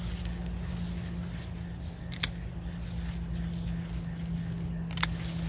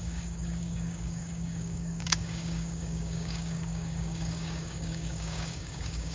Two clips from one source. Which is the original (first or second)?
first